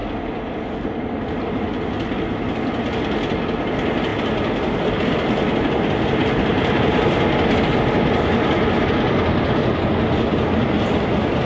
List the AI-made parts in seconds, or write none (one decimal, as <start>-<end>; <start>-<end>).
none